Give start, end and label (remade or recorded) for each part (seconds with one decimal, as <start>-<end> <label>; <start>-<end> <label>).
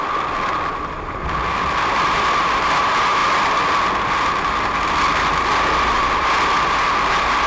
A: 0.0-7.5 recorded